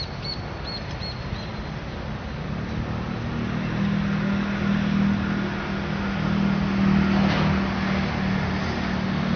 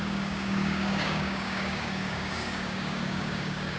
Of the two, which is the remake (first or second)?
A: second